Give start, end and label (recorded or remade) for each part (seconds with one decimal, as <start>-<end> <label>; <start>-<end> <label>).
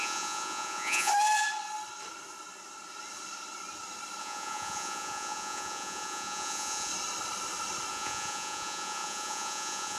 0.0-1.1 remade; 1.1-4.2 recorded; 4.2-6.9 remade; 6.9-7.9 recorded; 7.9-10.0 remade